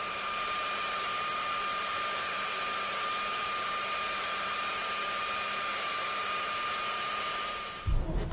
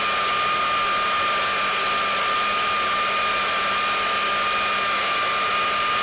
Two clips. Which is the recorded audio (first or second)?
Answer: second